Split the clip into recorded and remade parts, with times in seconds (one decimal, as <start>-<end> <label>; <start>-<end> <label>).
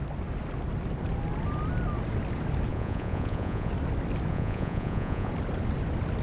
0.0-2.7 recorded; 2.7-3.7 remade; 3.7-4.3 recorded; 4.3-5.3 remade; 5.3-6.2 recorded